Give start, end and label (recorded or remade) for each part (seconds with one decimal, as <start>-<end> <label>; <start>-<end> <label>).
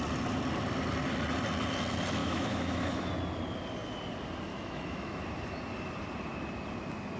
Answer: 0.0-2.2 recorded; 2.2-3.1 remade; 3.1-4.5 recorded; 4.5-5.2 remade; 5.2-7.2 recorded